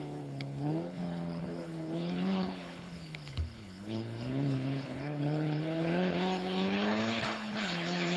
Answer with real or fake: fake